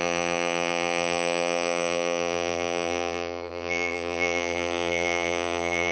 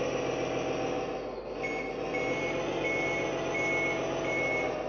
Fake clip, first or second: first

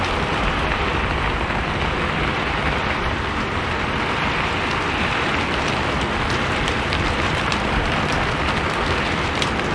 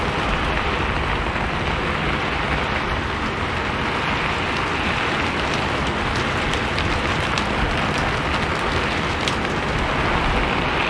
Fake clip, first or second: first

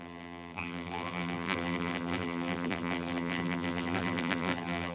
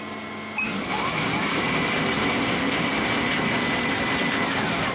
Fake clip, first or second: first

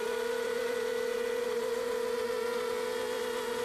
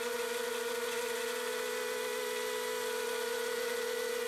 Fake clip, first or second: first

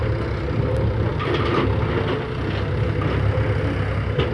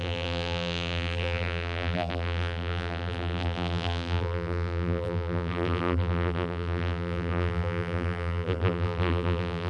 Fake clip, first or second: second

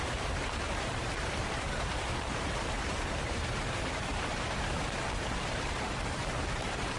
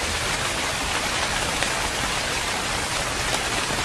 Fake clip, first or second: first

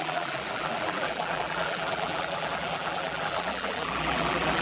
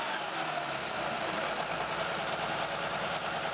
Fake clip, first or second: first